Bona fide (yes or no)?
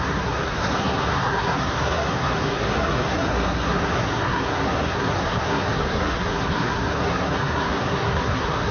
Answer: no